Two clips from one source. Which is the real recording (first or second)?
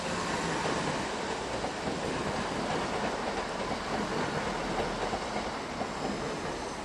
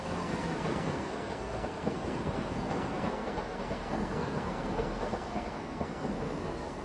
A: first